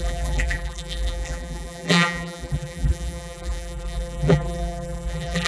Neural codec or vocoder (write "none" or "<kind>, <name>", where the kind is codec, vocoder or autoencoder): vocoder, BigVGAN v2